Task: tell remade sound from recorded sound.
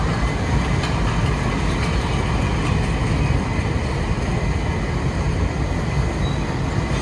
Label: recorded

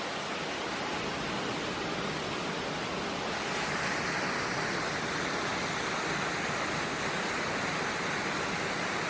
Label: recorded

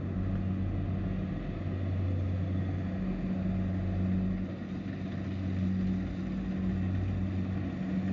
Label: recorded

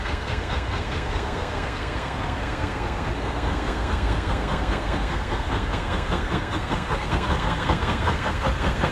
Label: remade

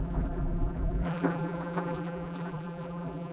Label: remade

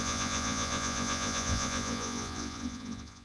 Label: remade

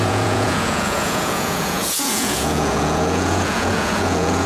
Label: remade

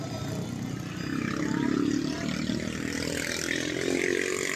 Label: remade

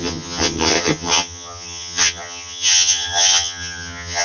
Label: remade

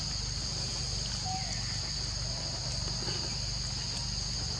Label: recorded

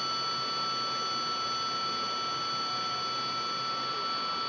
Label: recorded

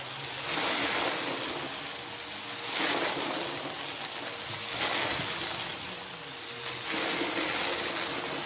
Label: recorded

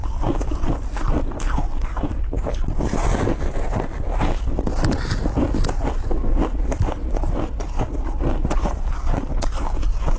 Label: recorded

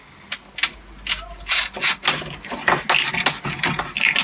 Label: recorded